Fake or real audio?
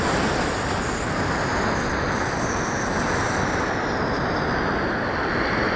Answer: real